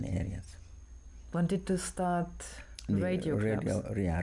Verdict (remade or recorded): recorded